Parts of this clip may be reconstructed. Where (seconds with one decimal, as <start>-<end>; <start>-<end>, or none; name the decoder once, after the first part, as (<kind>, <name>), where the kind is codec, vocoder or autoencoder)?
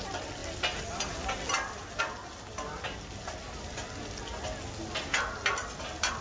none